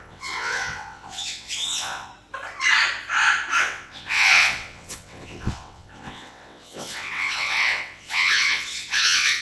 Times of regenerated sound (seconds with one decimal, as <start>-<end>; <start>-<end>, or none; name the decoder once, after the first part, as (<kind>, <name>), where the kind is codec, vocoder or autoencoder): 0.0-2.1 (vocoder, WaveNeXt); 3.6-9.4